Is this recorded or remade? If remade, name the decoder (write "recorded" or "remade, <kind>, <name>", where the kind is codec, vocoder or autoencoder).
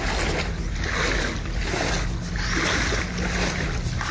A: recorded